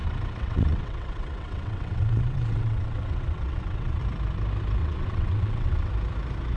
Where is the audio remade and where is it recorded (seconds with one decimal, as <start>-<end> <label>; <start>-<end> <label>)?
0.0-4.0 remade; 4.0-4.8 recorded; 4.8-5.9 remade; 5.9-6.6 recorded